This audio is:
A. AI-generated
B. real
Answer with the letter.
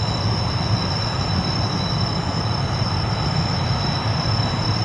A